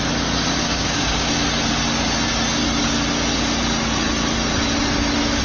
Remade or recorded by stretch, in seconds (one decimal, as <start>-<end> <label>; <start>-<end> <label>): 0.0-0.6 recorded; 0.6-1.3 remade; 1.3-5.4 recorded